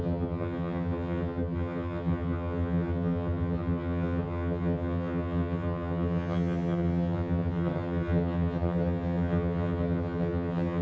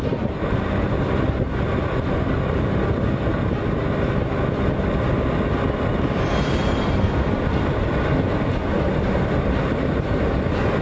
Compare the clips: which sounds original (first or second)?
second